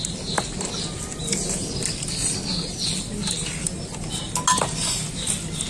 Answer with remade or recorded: recorded